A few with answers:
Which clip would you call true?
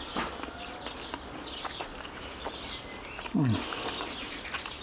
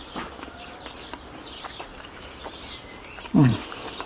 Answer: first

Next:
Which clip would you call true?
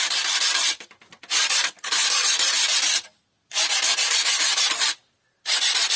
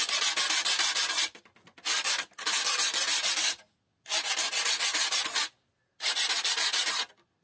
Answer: second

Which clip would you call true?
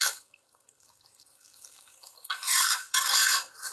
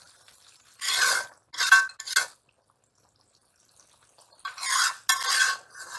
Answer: second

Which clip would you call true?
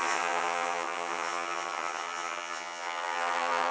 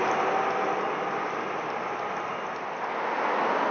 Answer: second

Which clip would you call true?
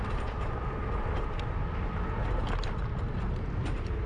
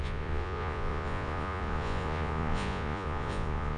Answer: first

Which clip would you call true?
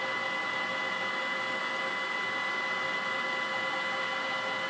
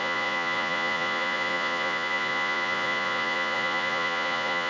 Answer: first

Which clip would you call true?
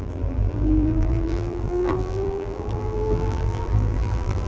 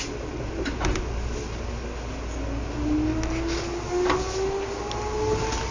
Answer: second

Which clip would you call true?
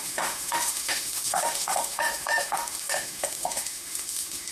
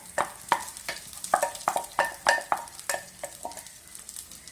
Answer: second